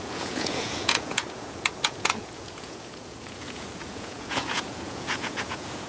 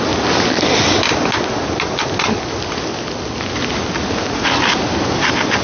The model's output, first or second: first